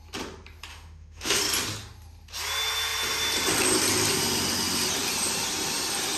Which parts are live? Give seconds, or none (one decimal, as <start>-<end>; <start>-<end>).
0.0-0.7; 1.4-6.2